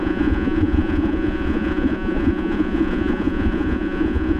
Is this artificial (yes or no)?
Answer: yes